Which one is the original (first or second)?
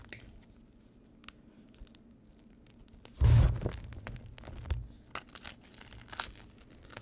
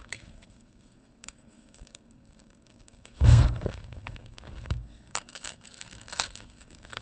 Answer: first